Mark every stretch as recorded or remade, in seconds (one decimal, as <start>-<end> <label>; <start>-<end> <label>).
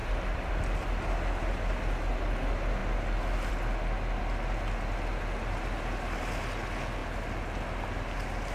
0.0-1.2 remade; 1.2-8.5 recorded